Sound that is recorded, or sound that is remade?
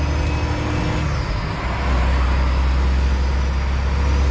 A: recorded